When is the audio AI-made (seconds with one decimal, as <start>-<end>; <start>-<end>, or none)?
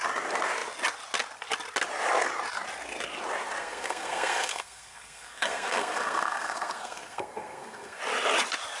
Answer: 3.6-8.0